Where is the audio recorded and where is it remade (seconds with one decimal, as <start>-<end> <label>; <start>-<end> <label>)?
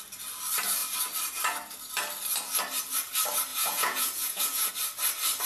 0.0-3.5 recorded; 3.5-4.7 remade; 4.7-5.5 recorded